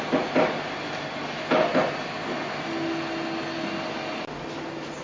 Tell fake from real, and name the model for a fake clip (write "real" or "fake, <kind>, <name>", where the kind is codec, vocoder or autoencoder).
real